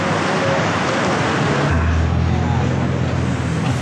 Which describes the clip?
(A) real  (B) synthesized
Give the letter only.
A